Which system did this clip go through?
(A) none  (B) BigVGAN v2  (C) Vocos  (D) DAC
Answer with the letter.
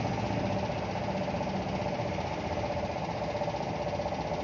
A